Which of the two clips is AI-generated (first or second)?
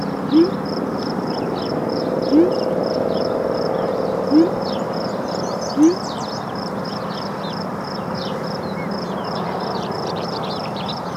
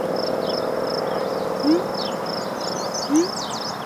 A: first